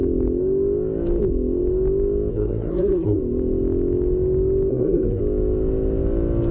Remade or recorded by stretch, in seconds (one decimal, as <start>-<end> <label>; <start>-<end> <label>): 0.0-2.3 recorded; 2.3-3.2 remade; 3.2-4.7 recorded; 4.7-5.2 remade; 5.2-6.5 recorded